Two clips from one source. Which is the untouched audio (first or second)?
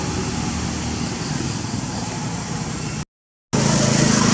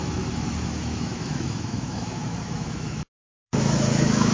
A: first